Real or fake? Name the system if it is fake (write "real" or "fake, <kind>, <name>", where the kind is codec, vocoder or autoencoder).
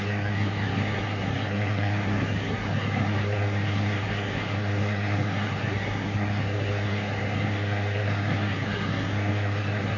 fake, codec, SNAC